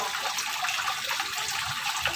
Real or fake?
real